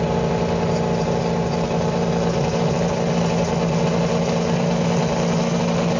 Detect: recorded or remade recorded